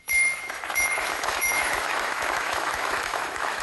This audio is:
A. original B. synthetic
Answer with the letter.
B